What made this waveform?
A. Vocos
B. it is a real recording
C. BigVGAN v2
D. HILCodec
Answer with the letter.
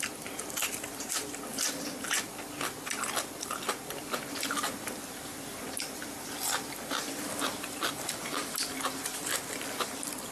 C